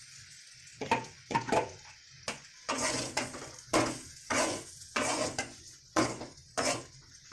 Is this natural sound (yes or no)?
no